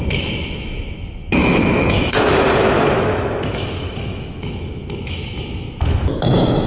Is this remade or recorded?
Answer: remade